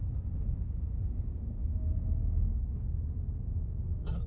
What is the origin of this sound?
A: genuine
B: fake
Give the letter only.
A